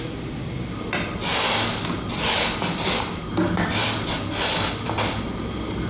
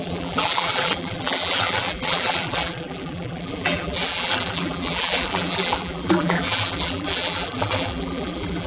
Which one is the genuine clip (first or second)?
first